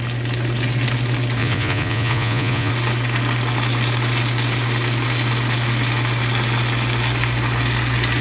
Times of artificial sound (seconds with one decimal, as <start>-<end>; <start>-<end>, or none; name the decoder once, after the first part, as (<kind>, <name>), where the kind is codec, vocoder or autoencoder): 1.4-2.7 (vocoder, Vocos)